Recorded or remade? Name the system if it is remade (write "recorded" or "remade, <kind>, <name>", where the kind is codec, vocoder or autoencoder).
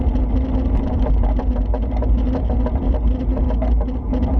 recorded